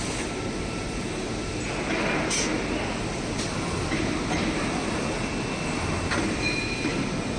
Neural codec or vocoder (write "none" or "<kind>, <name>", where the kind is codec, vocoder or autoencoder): none